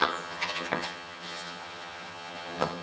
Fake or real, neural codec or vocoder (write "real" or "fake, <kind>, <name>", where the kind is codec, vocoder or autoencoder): fake, vocoder, HiFi-GAN